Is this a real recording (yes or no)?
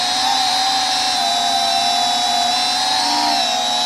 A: yes